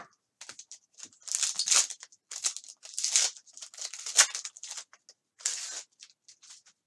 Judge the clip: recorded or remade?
recorded